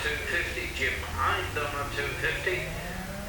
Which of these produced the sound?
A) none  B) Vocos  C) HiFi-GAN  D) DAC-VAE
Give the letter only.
A